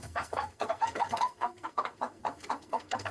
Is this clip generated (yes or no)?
yes